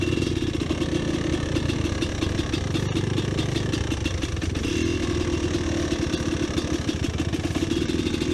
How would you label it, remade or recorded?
recorded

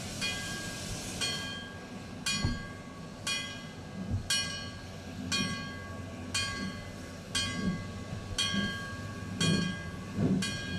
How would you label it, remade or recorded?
recorded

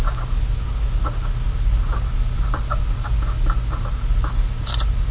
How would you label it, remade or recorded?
recorded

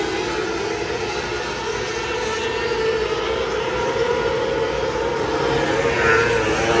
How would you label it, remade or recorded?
recorded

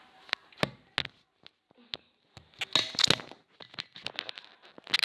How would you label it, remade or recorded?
recorded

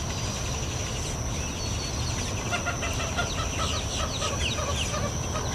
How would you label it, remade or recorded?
recorded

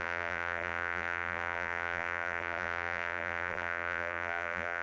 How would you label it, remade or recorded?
remade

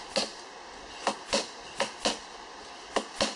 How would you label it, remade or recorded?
recorded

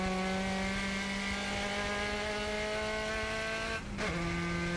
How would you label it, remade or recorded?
recorded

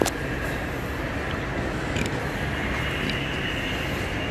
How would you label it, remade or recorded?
recorded